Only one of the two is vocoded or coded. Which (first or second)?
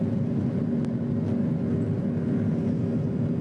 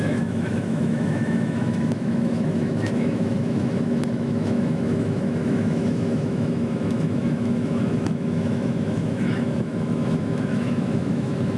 second